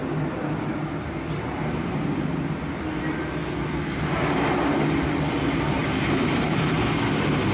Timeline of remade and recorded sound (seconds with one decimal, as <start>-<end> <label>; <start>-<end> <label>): 0.0-5.8 recorded; 5.8-6.4 remade; 6.4-7.5 recorded